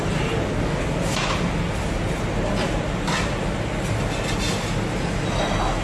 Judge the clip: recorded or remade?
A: recorded